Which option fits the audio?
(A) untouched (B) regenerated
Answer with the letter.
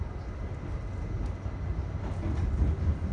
A